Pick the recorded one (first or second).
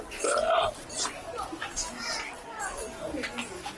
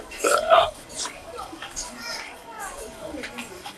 first